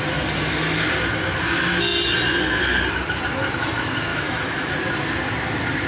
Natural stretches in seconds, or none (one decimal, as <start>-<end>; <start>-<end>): 0.0-4.1; 4.7-5.9